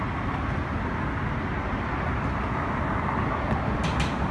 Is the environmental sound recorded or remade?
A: recorded